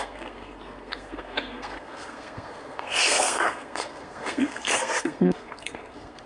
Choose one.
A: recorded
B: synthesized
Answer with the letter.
B